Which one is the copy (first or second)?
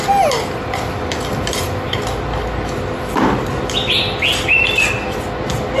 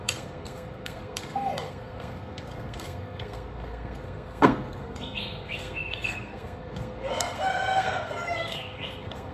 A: second